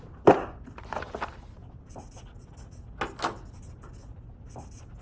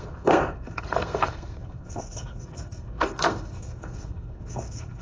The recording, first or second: first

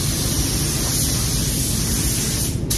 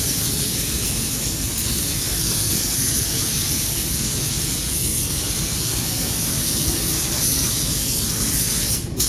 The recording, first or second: first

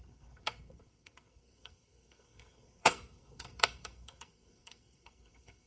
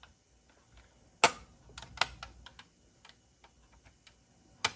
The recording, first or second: second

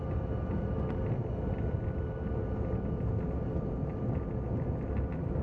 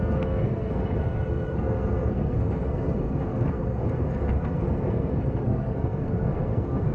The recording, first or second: first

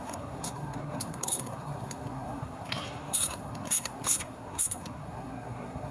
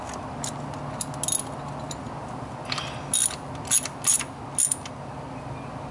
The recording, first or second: second